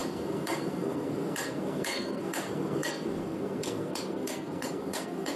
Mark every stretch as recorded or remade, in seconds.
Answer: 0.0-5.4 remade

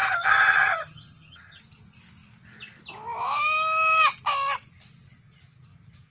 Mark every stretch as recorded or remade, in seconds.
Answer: 0.0-1.6 remade; 1.6-6.1 recorded

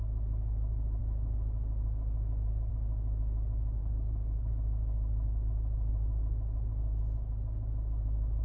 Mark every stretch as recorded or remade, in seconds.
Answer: 0.0-3.8 recorded; 3.8-4.5 remade; 4.5-8.4 recorded